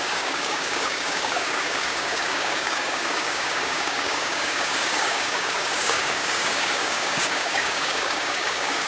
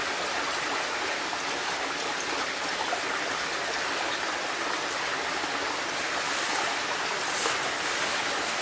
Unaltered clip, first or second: second